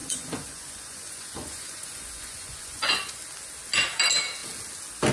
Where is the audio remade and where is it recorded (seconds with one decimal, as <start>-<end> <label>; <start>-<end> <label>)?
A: 0.0-3.1 remade; 3.1-5.1 recorded